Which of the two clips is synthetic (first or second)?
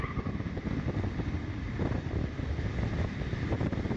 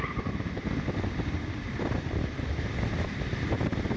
second